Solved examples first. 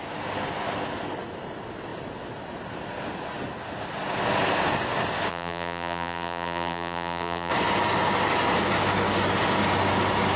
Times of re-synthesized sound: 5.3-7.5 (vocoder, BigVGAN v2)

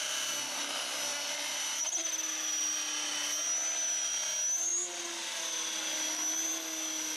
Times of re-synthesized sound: none

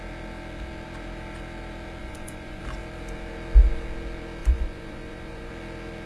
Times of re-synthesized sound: 2.0-2.6 (vocoder, Vocos); 4.4-5.5

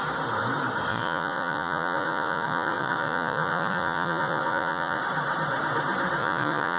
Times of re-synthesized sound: 0.9-5.0 (vocoder, Vocos); 6.2-6.8

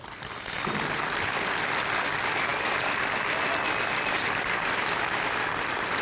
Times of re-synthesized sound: none

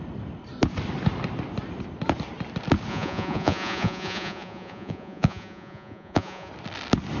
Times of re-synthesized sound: 2.9-6.5 (vocoder, Vocos)